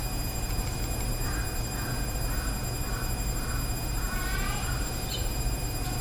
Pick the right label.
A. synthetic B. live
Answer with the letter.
A